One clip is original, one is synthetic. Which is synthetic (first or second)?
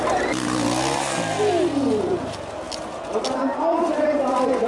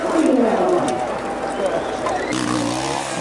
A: second